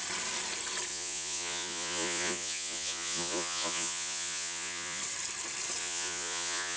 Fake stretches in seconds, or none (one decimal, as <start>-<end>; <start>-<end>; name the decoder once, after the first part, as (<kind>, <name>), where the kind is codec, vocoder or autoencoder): 0.9-5.0 (vocoder, Vocos); 5.8-6.8